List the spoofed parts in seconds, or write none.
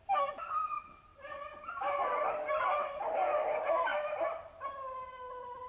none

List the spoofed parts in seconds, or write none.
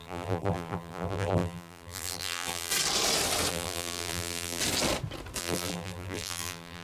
0.0-2.7 (vocoder, BigVGAN v2); 3.5-4.6; 5.4-6.8